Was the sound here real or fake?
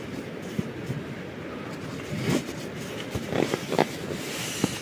real